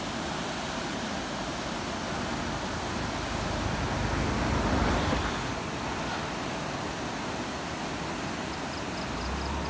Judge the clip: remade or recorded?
recorded